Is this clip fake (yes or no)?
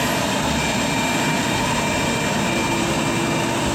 no